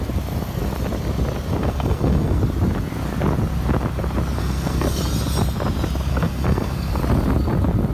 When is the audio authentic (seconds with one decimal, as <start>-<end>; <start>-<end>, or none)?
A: 0.0-1.6; 2.4-4.4; 5.0-6.1; 7.0-7.9